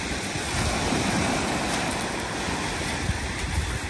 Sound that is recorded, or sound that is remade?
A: recorded